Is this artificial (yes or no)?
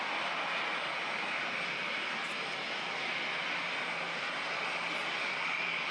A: no